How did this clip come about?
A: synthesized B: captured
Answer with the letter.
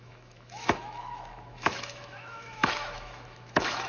A